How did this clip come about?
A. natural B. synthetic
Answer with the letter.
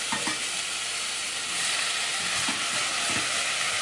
A